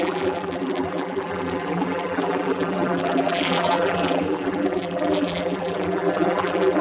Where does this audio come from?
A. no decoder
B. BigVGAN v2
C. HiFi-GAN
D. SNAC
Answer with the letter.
B